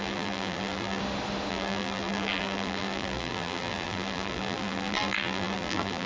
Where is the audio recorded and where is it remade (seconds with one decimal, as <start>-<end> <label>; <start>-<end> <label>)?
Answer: 0.0-1.0 remade; 1.0-1.5 recorded; 1.5-6.1 remade